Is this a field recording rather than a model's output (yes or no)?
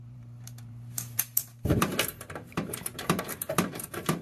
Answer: no